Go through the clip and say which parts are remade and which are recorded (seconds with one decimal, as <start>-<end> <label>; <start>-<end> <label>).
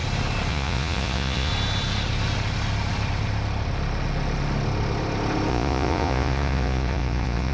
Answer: 0.0-0.5 recorded; 0.5-1.5 remade; 1.5-5.5 recorded; 5.5-7.5 remade